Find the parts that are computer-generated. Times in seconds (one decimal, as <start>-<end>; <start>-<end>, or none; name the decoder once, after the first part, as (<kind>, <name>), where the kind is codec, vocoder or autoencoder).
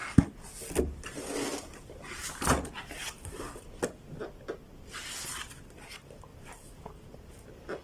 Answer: 2.2-4.0 (vocoder, BigVGAN v2)